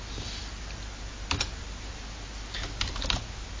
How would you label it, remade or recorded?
recorded